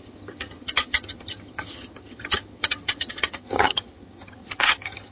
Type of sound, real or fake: fake